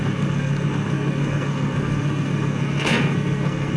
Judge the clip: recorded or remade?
remade